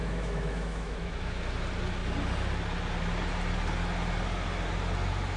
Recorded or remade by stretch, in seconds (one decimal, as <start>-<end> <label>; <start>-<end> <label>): 0.0-1.5 remade; 1.5-5.4 recorded